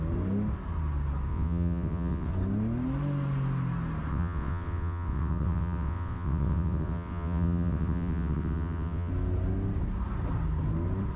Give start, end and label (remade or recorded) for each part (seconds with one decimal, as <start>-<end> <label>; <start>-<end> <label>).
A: 0.0-1.3 recorded; 1.3-2.3 remade; 2.3-4.1 recorded; 4.1-9.1 remade; 9.1-11.2 recorded